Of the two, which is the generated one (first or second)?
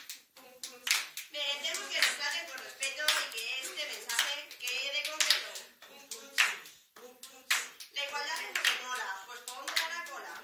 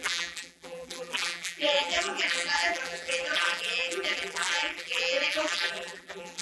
second